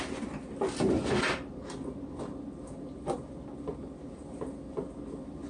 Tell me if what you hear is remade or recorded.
recorded